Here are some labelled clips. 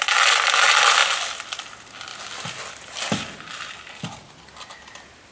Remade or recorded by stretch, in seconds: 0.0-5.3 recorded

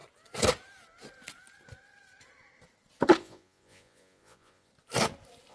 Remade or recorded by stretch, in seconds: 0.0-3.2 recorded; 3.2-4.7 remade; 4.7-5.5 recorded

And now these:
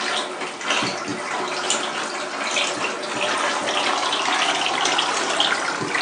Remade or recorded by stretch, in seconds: 0.0-6.0 recorded

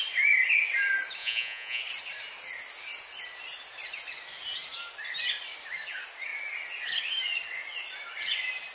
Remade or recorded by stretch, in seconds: 0.0-1.2 recorded; 1.2-1.8 remade; 1.8-8.7 recorded